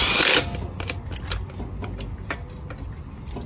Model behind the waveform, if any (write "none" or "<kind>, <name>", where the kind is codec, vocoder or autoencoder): none